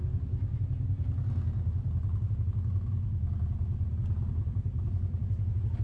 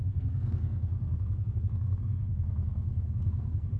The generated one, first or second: second